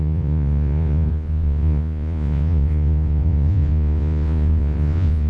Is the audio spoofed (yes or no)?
yes